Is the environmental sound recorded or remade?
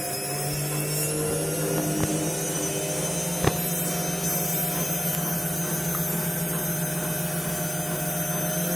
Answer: recorded